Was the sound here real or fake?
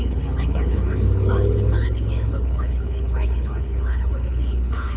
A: fake